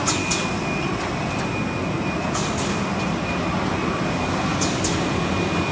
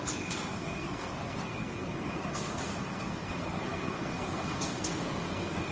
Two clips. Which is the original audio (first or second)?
first